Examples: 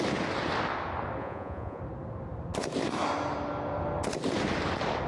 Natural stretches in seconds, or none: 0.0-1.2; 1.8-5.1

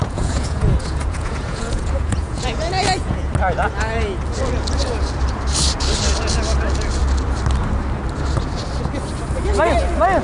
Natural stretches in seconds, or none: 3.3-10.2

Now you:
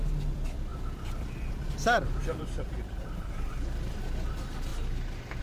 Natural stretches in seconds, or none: 0.0-2.2; 4.0-4.7

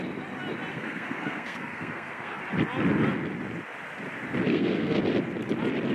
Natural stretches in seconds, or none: 0.0-0.7; 2.4-4.5; 5.0-5.9

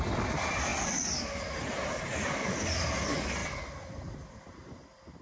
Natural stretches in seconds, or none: 0.0-5.2

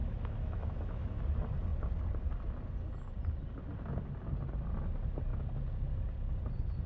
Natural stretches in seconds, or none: 1.2-6.9

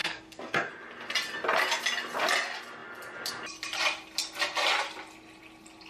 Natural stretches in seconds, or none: 0.7-5.9